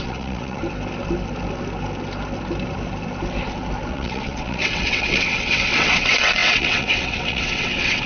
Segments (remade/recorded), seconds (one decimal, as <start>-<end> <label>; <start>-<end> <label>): 0.0-0.6 remade; 0.6-3.9 recorded; 3.9-8.1 remade